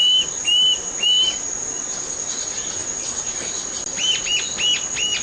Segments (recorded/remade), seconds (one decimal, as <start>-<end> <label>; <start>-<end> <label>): 0.0-5.2 recorded